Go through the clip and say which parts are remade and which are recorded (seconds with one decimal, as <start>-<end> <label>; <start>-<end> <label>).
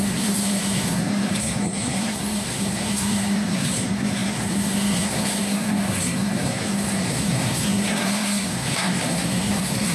0.0-9.9 remade